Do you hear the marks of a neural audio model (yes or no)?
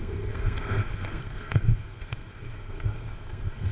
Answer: yes